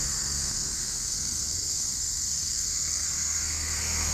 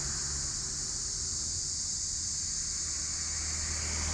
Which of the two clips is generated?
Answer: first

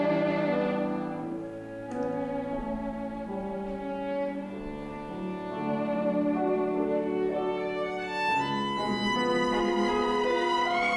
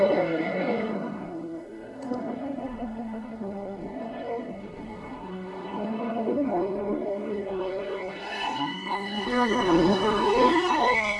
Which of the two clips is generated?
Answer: second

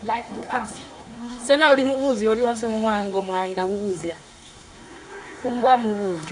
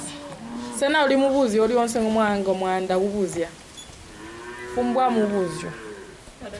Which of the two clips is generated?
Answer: first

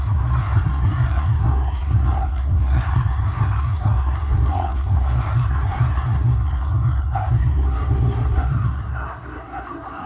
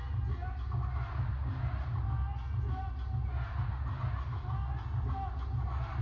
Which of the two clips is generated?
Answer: first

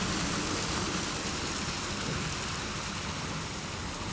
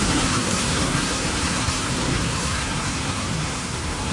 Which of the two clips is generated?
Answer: second